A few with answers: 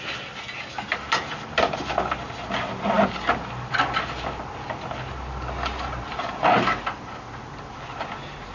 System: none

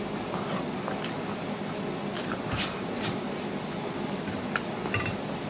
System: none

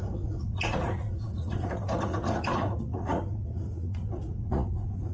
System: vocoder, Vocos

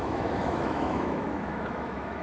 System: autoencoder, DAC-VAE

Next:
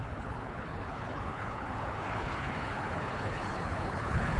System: codec, HILCodec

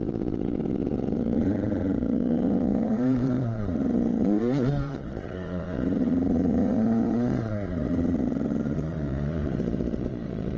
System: vocoder, Vocos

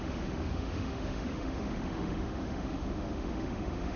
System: autoencoder, DAC-VAE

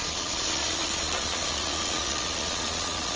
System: vocoder, Vocos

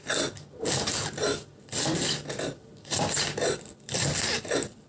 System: none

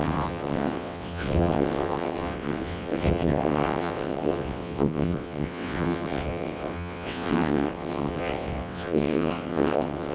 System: vocoder, WaveNeXt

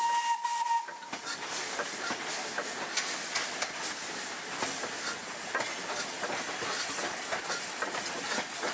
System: none